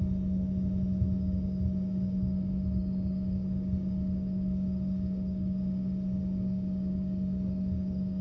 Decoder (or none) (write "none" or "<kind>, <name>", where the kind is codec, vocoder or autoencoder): codec, DAC